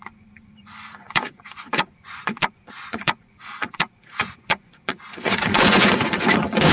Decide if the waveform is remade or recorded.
remade